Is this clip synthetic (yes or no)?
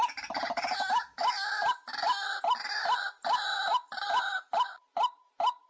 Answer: no